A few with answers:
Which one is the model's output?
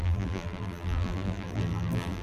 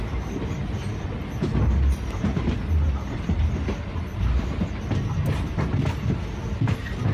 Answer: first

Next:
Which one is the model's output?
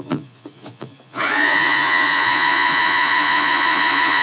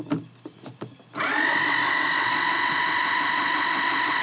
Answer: first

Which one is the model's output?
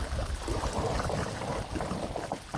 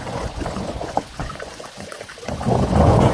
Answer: second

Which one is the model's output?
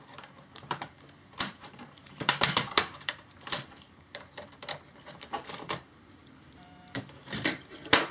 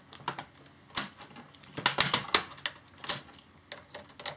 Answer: first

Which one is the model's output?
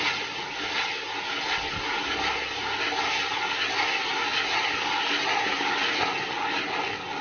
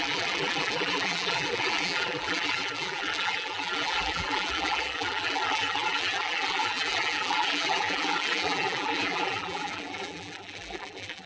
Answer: second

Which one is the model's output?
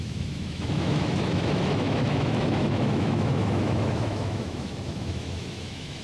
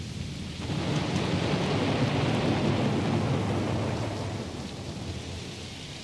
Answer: first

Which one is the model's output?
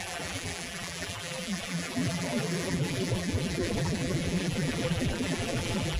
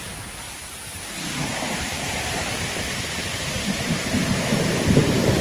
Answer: first